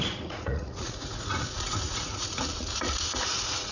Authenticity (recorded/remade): remade